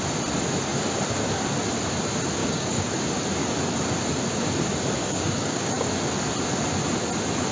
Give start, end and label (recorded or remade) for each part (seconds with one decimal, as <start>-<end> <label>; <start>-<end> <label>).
0.0-2.4 recorded; 2.4-2.9 remade; 2.9-5.0 recorded; 5.0-5.9 remade; 5.9-7.5 recorded